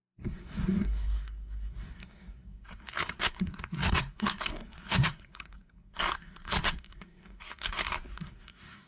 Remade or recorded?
remade